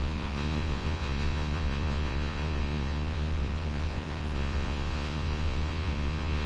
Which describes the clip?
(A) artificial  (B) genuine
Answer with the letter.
A